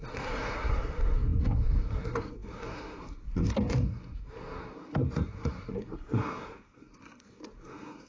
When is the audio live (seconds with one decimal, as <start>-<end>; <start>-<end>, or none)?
none